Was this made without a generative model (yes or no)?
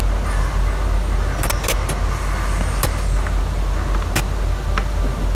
yes